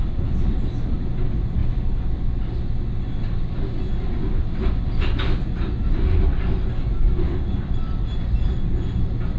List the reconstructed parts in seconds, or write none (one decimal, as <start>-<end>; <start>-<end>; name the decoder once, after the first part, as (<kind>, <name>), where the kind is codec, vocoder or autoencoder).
none